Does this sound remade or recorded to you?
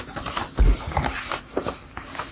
recorded